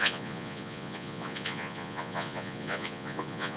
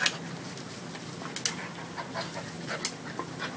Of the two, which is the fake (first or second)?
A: first